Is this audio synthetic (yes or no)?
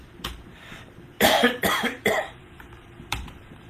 yes